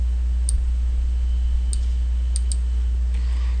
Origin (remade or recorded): recorded